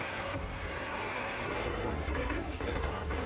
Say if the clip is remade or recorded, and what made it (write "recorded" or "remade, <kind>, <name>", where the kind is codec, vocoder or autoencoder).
remade, codec, SNAC